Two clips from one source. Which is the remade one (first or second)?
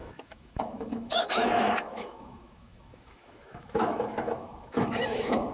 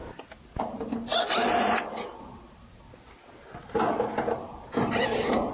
first